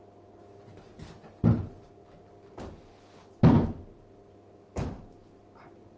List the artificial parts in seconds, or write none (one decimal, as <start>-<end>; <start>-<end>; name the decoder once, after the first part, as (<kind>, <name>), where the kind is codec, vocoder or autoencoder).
none